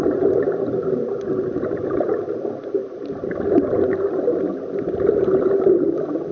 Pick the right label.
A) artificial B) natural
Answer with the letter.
B